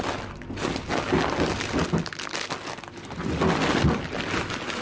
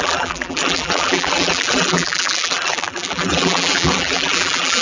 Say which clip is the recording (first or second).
first